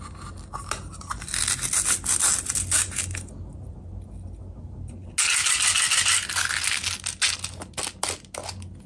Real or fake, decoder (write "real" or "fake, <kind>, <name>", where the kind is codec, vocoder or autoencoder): real